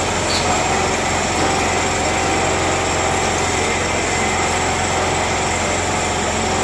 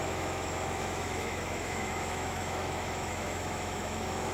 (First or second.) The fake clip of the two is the second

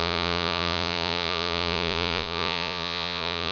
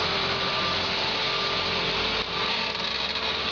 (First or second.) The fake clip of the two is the first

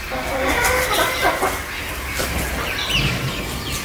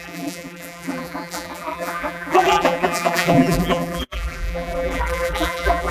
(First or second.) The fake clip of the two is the second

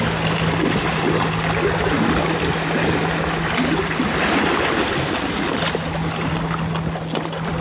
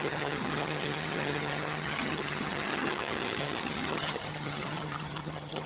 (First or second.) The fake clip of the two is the second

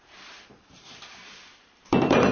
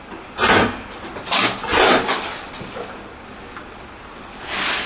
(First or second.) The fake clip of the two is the first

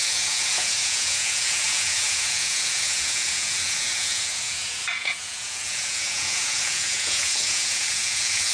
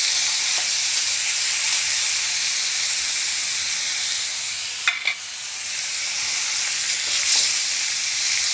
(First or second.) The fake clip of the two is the first